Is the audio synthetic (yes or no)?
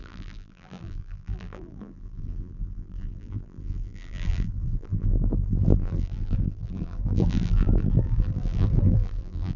yes